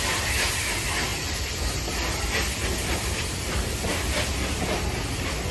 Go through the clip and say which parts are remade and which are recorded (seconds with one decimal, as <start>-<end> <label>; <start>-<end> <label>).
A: 0.0-5.5 recorded